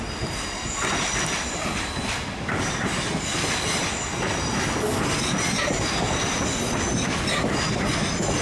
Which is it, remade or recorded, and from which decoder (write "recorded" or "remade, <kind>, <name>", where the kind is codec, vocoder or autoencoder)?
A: recorded